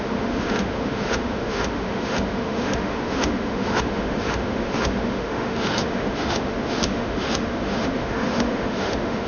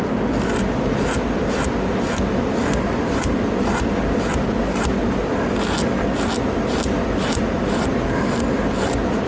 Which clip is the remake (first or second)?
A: first